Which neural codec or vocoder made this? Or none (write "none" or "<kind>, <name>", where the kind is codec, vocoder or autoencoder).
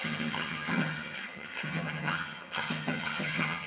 vocoder, HiFi-GAN